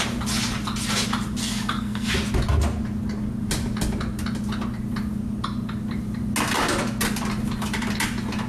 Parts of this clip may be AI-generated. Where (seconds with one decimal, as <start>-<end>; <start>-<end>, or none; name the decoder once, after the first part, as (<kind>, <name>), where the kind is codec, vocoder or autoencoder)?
1.4-2.1 (codec, SNAC)